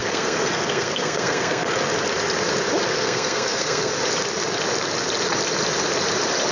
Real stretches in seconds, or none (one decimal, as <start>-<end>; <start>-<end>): 1.7-2.9; 3.9-6.5

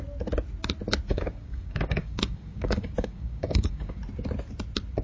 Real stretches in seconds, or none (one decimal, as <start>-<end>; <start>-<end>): 0.0-1.1; 4.0-5.0

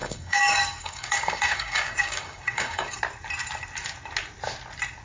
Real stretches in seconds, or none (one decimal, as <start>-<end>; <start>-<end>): 3.0-5.0